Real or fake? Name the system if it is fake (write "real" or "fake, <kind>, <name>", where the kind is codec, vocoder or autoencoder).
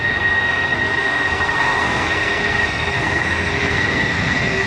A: fake, codec, SNAC